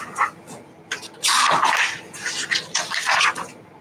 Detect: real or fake fake